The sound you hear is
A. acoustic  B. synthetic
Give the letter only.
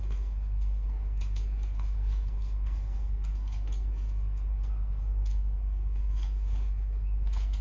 B